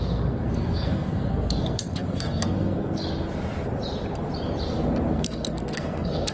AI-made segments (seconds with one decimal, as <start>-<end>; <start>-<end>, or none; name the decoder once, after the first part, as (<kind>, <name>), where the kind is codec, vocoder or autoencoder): 0.0-3.0 (codec, SNAC); 5.1-6.3